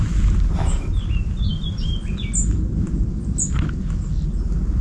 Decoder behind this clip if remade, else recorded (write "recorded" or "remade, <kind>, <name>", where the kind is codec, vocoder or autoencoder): recorded